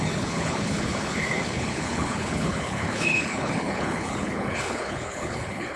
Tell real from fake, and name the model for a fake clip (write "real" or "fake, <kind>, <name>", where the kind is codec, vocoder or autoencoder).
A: fake, codec, HILCodec